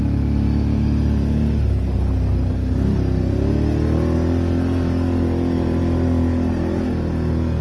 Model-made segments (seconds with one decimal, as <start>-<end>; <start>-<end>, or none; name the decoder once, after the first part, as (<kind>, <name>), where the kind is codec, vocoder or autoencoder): none